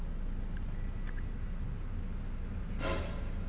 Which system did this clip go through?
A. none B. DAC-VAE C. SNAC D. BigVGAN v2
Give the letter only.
A